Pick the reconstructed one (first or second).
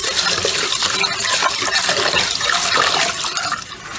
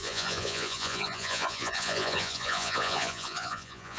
second